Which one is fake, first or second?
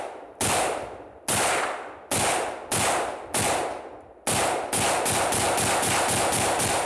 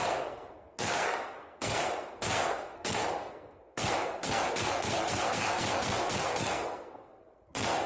second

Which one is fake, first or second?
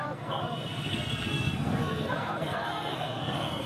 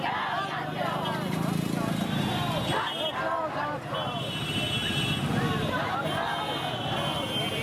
first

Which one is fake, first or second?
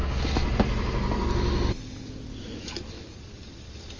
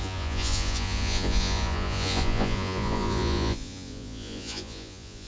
second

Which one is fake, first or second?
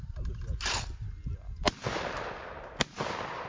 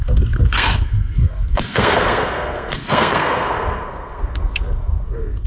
second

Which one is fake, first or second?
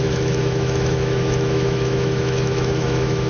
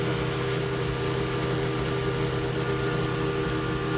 first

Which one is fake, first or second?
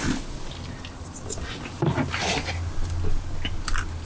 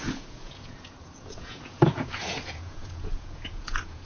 second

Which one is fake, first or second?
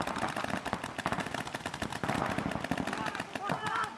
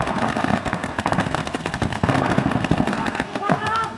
second